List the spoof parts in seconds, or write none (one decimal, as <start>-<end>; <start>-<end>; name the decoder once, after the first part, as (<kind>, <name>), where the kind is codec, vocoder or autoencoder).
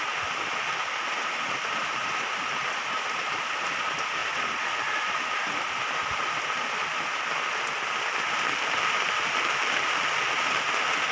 none